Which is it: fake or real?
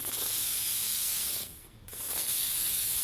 fake